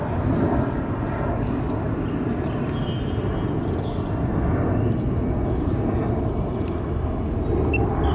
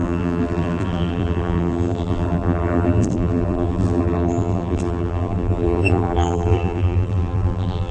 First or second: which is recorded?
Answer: first